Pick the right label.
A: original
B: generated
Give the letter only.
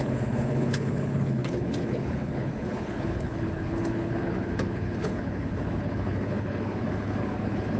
B